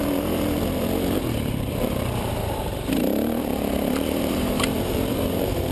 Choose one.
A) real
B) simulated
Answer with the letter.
B